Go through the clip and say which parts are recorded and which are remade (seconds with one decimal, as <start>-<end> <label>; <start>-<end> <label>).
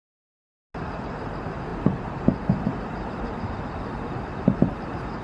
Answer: 0.0-5.2 recorded